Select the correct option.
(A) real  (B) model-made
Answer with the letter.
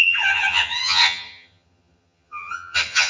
B